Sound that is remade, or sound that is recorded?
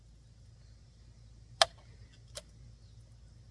recorded